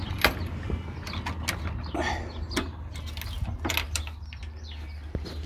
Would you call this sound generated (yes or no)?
no